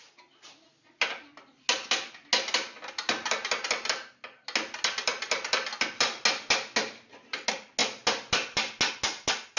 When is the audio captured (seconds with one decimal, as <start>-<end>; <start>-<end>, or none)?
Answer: 0.0-9.6